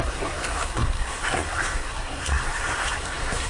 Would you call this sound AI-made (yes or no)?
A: yes